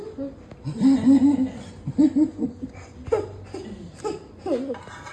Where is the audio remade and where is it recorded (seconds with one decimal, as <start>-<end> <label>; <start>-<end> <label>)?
0.0-5.1 recorded